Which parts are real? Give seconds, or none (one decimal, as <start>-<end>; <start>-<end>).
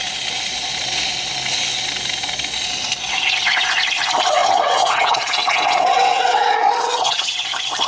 0.0-4.4; 7.4-7.9